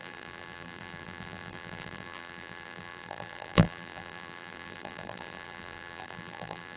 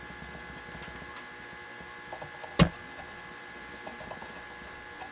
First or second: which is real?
second